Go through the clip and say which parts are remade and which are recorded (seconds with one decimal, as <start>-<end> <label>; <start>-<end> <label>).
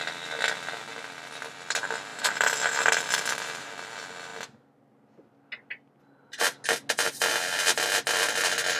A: 0.0-2.1 recorded; 2.1-3.7 remade; 3.7-8.8 recorded